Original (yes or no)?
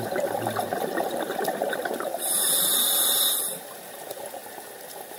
no